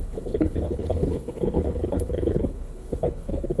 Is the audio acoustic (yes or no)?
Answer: no